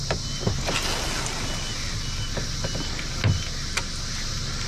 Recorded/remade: recorded